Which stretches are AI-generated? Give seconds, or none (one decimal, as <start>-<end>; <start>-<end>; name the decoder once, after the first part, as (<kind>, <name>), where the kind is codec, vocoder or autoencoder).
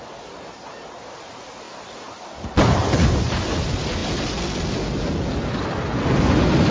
none